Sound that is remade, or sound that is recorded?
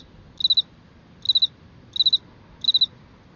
recorded